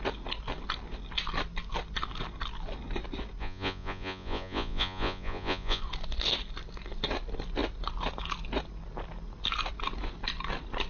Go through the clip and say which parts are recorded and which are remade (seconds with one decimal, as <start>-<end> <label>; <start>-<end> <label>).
0.0-3.4 recorded; 3.4-5.8 remade; 5.8-10.9 recorded